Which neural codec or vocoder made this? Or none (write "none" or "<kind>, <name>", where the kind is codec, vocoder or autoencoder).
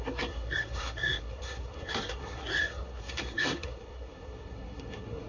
codec, SNAC